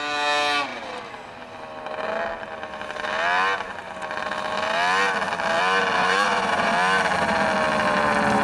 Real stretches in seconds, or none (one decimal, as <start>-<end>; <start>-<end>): 0.0-6.0; 6.7-8.4

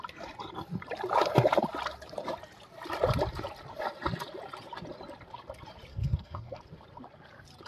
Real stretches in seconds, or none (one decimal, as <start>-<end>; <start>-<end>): 0.0-5.9; 6.6-7.7

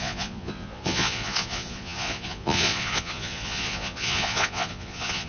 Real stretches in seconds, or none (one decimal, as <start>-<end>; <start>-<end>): none